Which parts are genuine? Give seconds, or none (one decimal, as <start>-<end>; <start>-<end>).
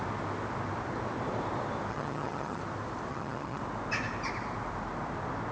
0.0-1.9; 2.6-3.1; 3.6-5.5